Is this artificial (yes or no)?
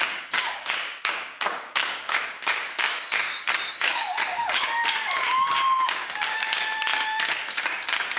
yes